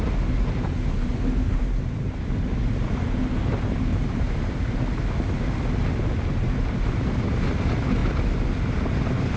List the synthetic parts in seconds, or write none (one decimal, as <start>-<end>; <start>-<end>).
3.9-5.0